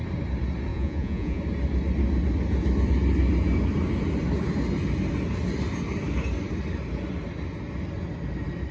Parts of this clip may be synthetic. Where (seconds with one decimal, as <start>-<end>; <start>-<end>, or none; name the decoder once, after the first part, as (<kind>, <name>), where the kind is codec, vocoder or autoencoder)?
0.7-1.4 (vocoder, Vocos)